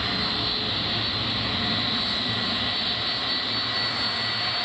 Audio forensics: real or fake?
real